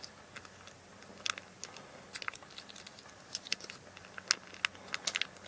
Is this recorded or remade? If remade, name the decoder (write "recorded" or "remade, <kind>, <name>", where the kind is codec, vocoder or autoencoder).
recorded